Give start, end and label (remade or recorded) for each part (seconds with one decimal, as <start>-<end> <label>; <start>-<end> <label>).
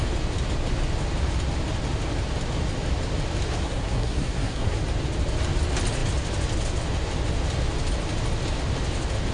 0.0-3.6 recorded; 3.6-4.8 remade; 4.8-9.3 recorded